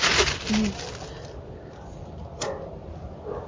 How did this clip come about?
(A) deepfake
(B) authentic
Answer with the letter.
B